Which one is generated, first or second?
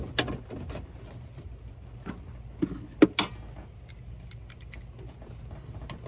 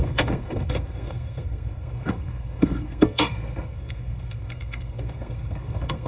second